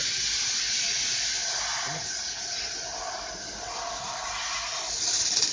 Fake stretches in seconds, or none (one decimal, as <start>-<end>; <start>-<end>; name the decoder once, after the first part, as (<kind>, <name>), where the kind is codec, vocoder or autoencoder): none